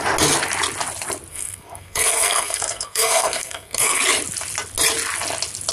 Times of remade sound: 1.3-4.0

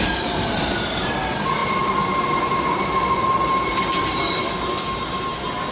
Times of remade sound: none

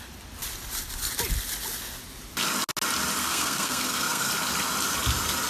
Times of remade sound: 3.2-4.3

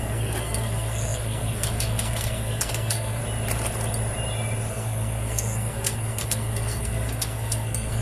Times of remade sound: 0.0-3.2; 4.7-8.0

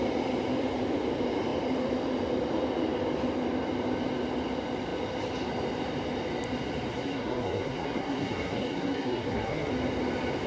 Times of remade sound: 6.9-9.7